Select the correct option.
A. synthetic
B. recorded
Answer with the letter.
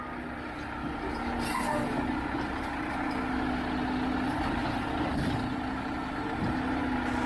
B